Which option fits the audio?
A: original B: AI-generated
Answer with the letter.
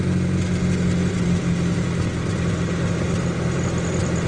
A